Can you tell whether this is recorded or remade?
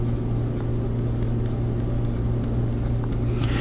recorded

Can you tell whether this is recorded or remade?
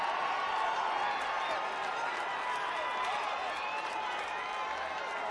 recorded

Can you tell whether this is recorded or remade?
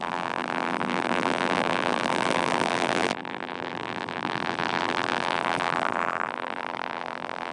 remade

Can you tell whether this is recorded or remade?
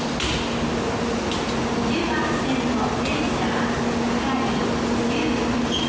recorded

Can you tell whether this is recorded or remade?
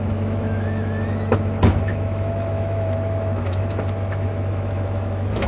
remade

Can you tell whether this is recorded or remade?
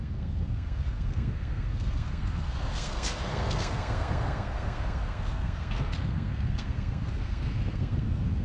remade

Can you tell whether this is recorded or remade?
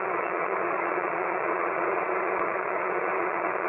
remade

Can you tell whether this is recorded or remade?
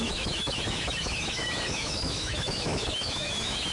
remade